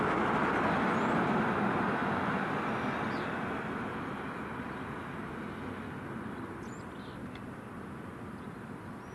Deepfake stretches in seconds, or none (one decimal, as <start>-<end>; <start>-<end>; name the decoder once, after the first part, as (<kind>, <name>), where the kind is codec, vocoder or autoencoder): none